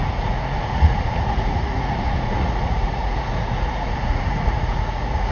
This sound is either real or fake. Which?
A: fake